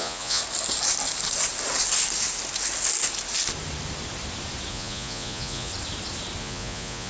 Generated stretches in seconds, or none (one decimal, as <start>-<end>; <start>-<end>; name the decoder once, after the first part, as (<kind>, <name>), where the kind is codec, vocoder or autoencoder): 0.0-0.4 (vocoder, Vocos); 4.7-5.7; 6.4-7.1